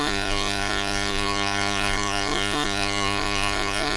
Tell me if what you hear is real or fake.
fake